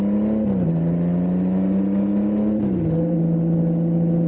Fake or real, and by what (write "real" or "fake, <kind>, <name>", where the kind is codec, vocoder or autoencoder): real